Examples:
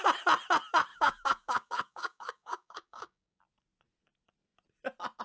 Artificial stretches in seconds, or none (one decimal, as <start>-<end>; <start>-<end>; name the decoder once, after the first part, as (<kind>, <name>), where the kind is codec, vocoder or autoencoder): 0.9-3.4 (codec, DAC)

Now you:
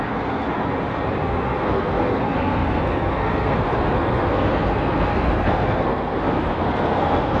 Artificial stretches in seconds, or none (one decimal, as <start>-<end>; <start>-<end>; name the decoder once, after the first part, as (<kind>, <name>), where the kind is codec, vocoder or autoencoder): 0.0-0.6 (codec, SNAC); 1.2-7.4

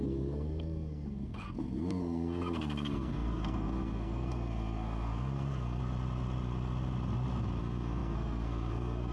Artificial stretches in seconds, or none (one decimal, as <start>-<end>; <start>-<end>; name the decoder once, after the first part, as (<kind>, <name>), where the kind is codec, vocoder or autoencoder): 0.0-5.8 (codec, SNAC); 7.6-9.1

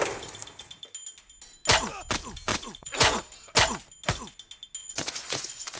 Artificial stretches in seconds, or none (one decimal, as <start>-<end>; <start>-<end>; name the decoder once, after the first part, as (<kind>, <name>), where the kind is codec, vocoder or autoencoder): 2.5-3.2 (vocoder, Vocos); 4.8-5.8

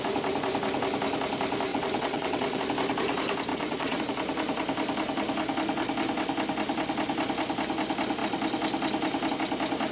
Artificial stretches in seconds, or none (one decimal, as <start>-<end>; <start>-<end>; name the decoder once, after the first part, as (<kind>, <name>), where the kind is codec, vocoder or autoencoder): 1.7-2.6 (vocoder, WaveNeXt); 3.5-4.0